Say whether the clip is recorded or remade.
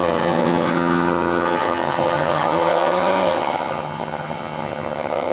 remade